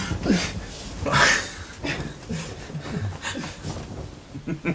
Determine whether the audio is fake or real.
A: real